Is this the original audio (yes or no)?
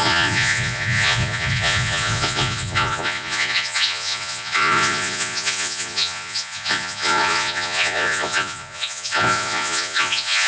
no